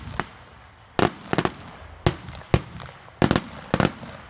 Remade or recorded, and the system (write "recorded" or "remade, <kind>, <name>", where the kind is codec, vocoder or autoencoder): recorded